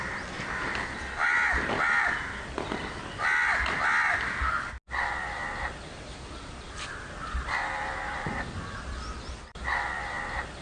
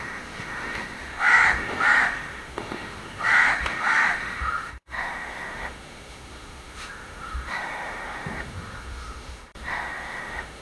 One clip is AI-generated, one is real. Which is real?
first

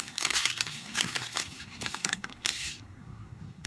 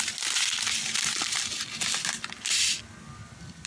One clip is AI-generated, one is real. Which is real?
second